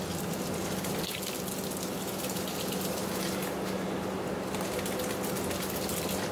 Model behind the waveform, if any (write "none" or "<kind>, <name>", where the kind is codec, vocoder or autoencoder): none